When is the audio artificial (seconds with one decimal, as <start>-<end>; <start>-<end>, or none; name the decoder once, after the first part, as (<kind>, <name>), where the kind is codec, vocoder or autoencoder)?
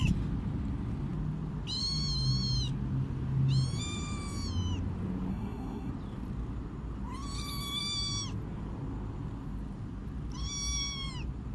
5.3-5.9 (codec, SNAC)